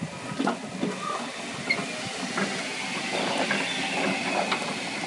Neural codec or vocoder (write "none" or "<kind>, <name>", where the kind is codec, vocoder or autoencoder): none